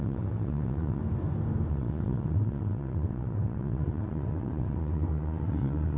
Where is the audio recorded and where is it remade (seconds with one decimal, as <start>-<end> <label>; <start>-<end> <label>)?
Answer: 0.0-1.0 remade; 1.0-1.7 recorded; 1.7-6.0 remade